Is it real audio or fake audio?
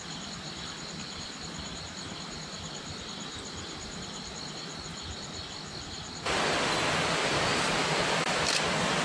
real